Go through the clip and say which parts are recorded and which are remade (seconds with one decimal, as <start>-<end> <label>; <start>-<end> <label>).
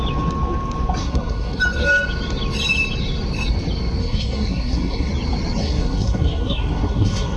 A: 0.0-1.0 recorded; 1.0-1.6 remade; 1.6-4.0 recorded; 4.0-5.1 remade; 5.1-5.6 recorded; 5.6-7.4 remade